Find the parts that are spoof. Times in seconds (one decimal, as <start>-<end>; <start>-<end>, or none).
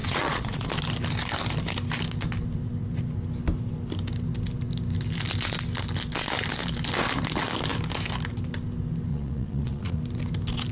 0.0-0.7; 9.1-10.0